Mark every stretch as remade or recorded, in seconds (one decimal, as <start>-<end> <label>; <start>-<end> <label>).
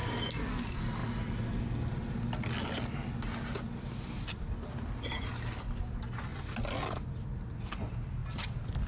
0.0-8.9 recorded